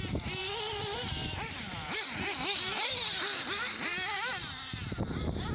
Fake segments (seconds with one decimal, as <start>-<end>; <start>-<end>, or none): 0.4-1.1